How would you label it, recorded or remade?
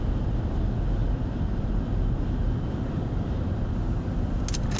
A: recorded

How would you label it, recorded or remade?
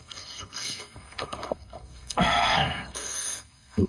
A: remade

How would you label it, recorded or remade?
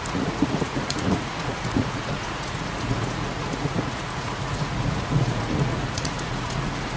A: remade